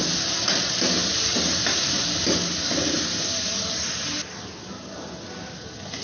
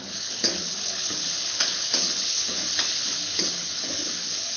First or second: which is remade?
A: second